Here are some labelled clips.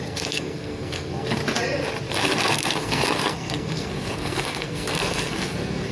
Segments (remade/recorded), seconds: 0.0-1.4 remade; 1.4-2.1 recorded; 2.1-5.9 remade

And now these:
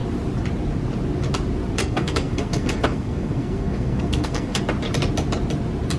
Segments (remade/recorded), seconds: 0.0-1.8 recorded; 1.8-4.6 remade; 4.6-6.0 recorded